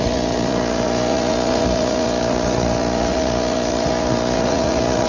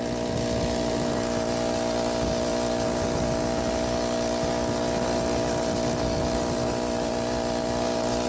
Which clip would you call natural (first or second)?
second